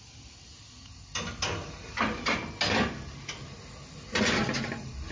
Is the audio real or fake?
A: real